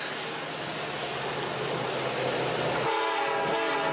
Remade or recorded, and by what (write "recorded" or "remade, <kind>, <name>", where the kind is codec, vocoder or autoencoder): recorded